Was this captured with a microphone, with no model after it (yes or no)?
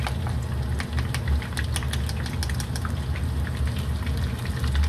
yes